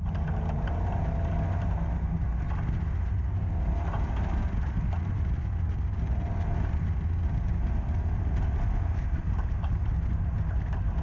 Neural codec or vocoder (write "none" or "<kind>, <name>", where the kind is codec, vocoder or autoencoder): none